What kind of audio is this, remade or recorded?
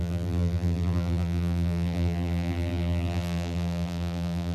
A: remade